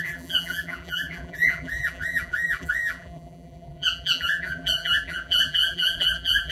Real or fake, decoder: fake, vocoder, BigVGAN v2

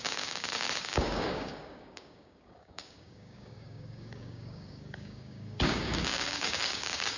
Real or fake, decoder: fake, codec, DAC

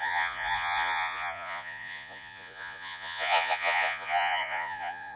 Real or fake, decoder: fake, vocoder, Vocos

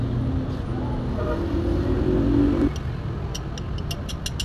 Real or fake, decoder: real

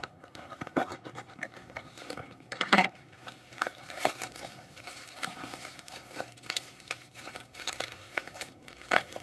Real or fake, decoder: fake, codec, SNAC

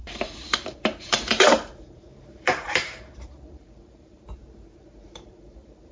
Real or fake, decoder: fake, vocoder, BigVGAN v2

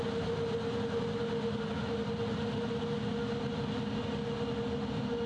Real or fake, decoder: real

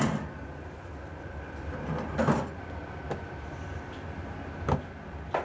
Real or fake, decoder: real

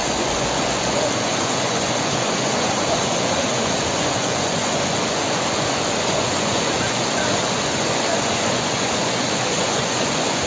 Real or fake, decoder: fake, vocoder, Vocos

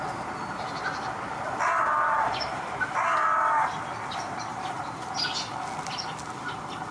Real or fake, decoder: real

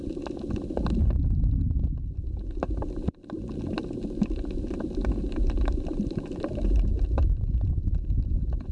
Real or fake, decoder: real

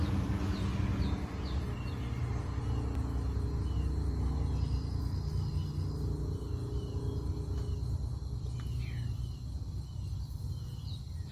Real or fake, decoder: real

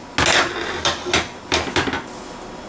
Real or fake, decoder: real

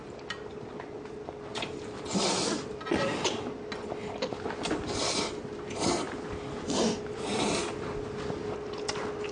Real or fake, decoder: real